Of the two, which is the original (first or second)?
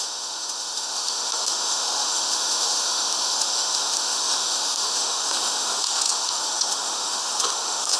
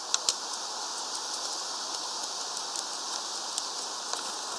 second